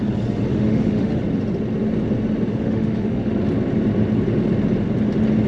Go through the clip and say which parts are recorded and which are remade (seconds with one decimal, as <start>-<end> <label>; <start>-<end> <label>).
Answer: 0.0-0.5 recorded; 0.5-1.2 remade; 1.2-2.5 recorded; 2.5-3.3 remade; 3.3-5.5 recorded